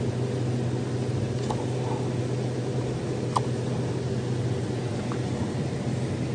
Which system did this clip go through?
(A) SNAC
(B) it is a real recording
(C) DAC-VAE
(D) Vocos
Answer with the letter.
B